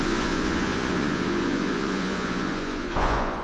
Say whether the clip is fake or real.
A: fake